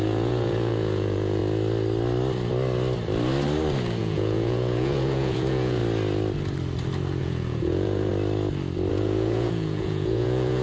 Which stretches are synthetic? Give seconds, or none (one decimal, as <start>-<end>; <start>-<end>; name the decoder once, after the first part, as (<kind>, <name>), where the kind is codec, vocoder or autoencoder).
0.0-1.4 (vocoder, Vocos); 4.0-5.8; 7.2-8.1; 8.9-10.6